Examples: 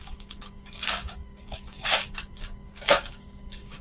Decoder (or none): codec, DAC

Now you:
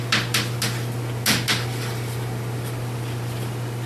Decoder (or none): none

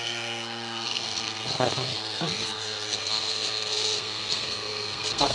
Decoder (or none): codec, SNAC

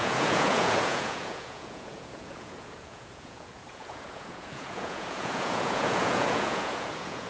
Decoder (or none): vocoder, Vocos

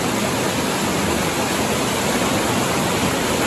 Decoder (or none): none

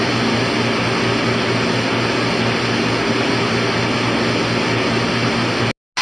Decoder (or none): none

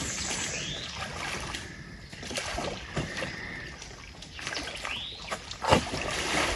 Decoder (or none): none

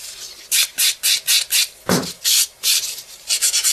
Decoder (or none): none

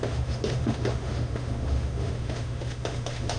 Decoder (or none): autoencoder, DAC-VAE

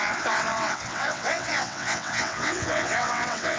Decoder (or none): vocoder, WaveNeXt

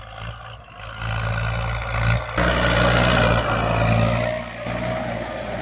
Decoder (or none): none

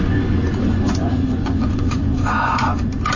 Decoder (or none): vocoder, Vocos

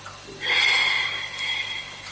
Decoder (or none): none